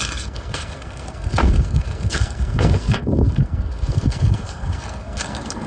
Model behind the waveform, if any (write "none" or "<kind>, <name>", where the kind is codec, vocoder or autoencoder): codec, SNAC